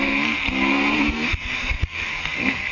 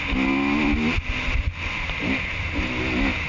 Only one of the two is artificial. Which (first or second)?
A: first